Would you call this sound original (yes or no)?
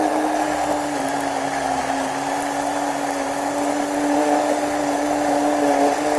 yes